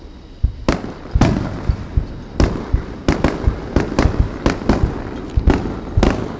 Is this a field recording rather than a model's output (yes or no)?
yes